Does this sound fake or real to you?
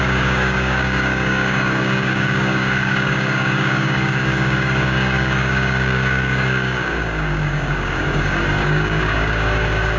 fake